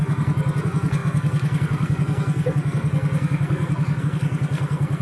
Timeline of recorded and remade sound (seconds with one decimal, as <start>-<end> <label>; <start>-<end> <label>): 0.0-5.0 remade